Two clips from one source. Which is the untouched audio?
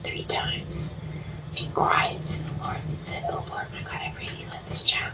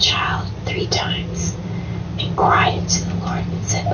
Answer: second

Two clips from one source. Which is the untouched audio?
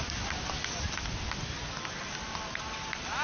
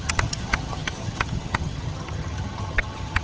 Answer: first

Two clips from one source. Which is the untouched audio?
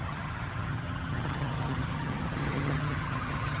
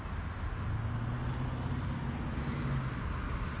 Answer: second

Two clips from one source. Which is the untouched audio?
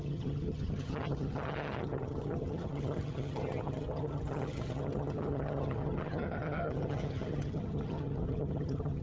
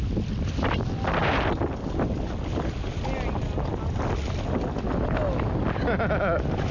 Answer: second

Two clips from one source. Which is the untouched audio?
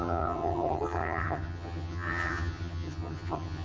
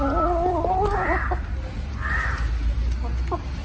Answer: second